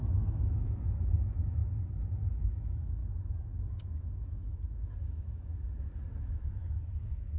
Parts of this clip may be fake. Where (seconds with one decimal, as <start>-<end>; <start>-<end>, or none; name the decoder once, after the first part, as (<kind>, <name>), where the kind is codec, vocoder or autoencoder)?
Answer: 0.0-1.6 (autoencoder, DAC-VAE); 2.4-3.0; 3.7-5.5; 6.2-7.4